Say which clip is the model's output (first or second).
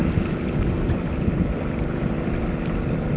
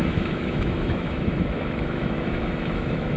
second